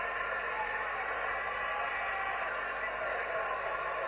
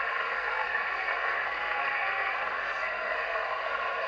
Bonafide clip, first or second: first